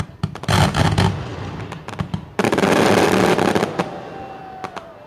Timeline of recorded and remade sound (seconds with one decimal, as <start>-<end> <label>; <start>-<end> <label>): 0.0-5.1 recorded